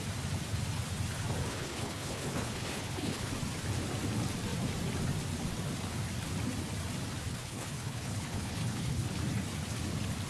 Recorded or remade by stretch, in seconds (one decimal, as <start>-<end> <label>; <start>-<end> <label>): 0.0-1.5 recorded; 1.5-3.3 remade; 3.3-7.3 recorded; 7.3-9.2 remade; 9.2-10.3 recorded